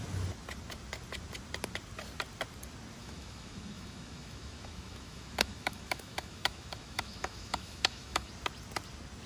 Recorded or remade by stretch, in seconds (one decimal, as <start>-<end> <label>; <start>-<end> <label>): 0.0-3.0 recorded; 3.0-8.3 remade; 8.3-9.3 recorded